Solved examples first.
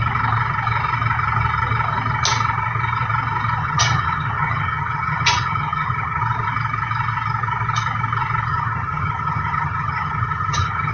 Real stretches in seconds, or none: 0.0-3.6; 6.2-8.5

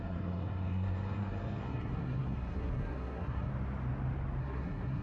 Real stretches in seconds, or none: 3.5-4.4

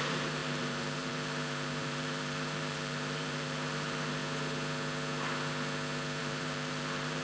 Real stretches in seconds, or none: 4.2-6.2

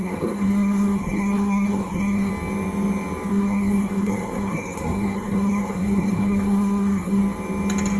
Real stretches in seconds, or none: 2.3-3.3; 7.2-8.0

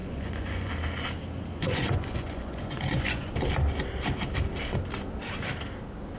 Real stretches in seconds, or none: 0.7-1.6; 3.3-6.2